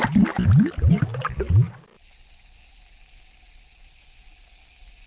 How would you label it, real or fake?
real